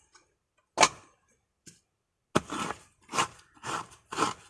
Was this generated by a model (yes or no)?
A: no